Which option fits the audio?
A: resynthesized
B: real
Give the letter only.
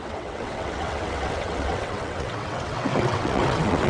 A